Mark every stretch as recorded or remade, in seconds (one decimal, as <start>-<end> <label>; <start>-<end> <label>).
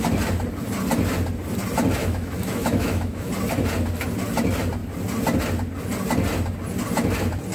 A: 0.0-2.0 recorded; 2.0-3.3 remade; 3.3-7.5 recorded